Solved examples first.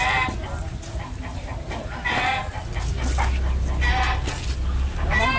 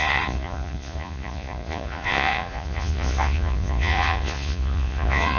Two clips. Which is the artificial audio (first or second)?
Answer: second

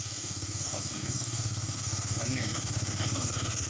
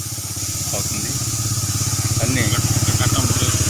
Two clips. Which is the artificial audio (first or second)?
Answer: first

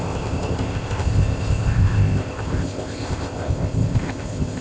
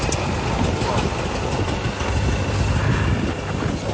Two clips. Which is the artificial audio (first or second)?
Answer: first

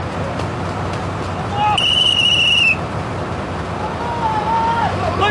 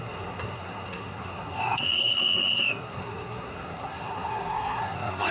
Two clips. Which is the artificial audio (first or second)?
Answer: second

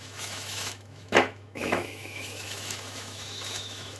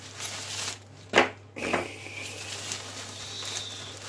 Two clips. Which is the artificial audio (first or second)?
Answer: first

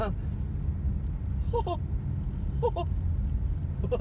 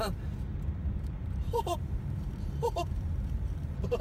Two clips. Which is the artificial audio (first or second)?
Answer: second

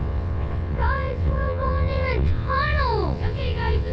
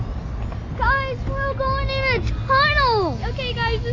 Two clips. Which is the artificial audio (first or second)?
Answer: first